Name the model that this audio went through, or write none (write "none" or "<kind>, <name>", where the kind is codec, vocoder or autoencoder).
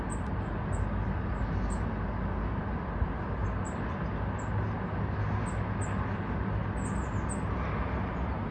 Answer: none